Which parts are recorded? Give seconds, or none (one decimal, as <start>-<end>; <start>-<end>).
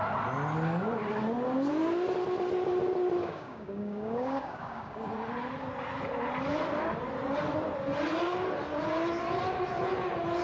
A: 0.0-3.2; 5.1-10.4